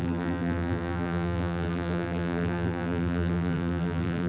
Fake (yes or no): yes